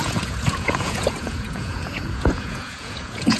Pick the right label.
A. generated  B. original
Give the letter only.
A